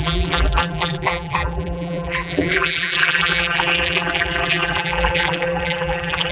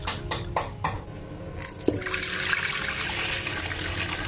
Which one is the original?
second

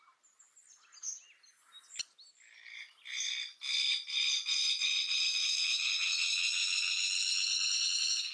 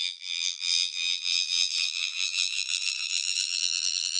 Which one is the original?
first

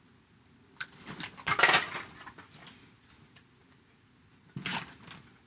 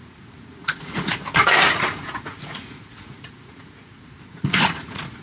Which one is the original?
first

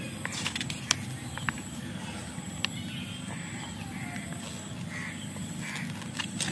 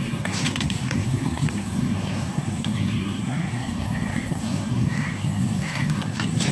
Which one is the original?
first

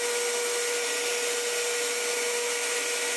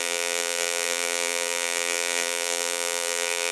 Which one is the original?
first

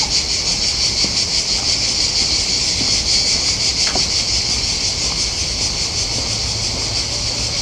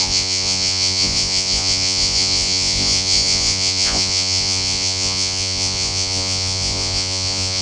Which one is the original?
first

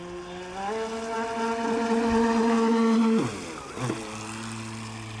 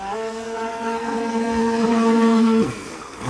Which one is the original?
first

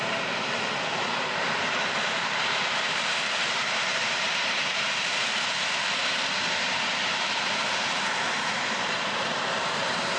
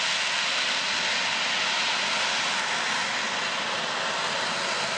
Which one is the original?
second